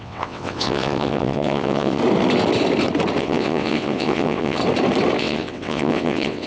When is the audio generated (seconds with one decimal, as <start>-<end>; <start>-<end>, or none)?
0.0-2.0; 3.2-4.6; 5.2-6.5